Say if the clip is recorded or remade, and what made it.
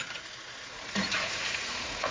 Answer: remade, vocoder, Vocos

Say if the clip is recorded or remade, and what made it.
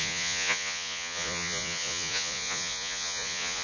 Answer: remade, vocoder, Vocos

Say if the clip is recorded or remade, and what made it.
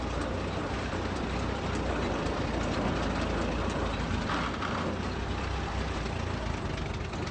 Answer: recorded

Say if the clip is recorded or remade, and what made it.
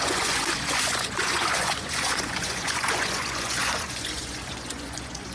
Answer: remade, vocoder, Vocos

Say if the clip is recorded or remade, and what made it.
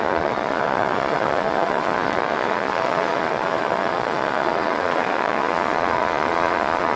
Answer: remade, vocoder, Vocos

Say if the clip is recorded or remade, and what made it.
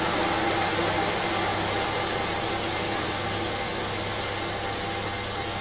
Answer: recorded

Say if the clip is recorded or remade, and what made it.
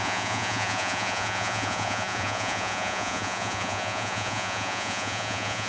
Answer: remade, vocoder, Vocos